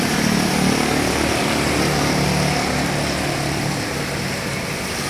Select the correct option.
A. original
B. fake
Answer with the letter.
A